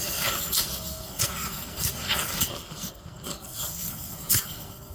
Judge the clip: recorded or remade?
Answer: remade